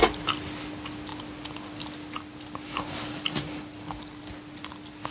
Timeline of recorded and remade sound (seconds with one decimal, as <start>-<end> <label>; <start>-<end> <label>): 0.0-5.1 recorded